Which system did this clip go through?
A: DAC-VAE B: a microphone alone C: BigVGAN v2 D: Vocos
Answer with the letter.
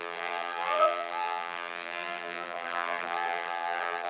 C